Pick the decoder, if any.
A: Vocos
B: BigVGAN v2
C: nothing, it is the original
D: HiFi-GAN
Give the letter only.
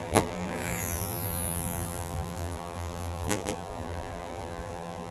B